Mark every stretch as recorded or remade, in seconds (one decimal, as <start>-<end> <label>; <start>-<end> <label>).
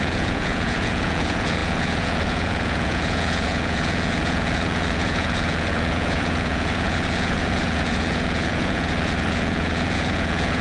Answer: 0.0-10.6 remade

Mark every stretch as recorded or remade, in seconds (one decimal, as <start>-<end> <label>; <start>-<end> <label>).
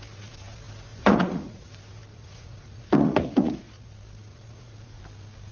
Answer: 0.0-0.9 recorded; 0.9-1.7 remade; 1.7-2.1 recorded; 2.1-3.9 remade; 3.9-4.3 recorded; 4.3-5.0 remade; 5.0-5.5 recorded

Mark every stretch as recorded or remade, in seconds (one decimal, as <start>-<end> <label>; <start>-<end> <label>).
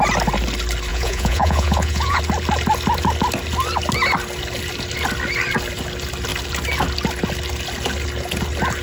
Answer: 0.0-0.9 recorded; 0.9-2.2 remade; 2.2-8.8 recorded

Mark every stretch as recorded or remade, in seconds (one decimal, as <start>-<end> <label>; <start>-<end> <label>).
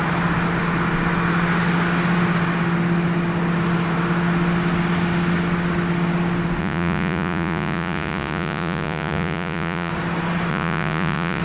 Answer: 0.0-6.6 recorded; 6.6-9.9 remade; 9.9-10.5 recorded; 10.5-11.4 remade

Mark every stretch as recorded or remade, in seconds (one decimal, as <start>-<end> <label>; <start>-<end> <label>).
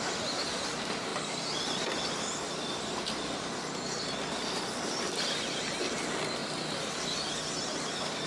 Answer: 0.0-8.3 recorded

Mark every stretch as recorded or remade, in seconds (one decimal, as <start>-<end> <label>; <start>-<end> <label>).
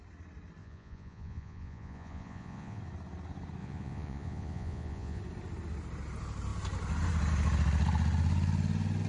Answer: 0.0-0.6 recorded; 0.6-2.8 remade; 2.8-3.6 recorded; 3.6-5.2 remade; 5.2-9.1 recorded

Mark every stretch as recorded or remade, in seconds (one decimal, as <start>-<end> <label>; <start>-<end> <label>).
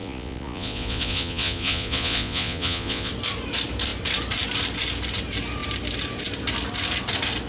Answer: 0.0-3.1 remade; 3.1-7.5 recorded